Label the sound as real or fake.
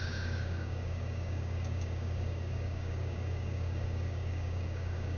fake